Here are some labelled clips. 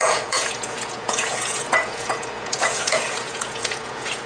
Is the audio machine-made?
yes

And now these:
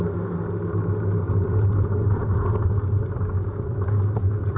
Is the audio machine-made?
no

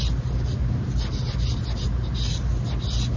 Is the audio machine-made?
no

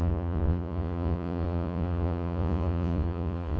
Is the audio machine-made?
yes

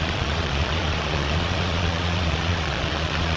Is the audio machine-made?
yes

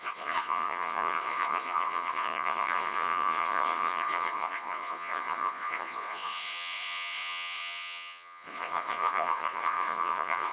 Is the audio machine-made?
yes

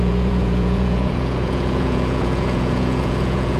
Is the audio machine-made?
yes